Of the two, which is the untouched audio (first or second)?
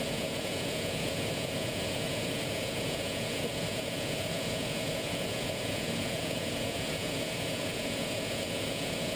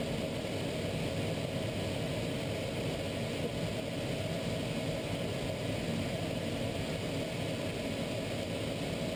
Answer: second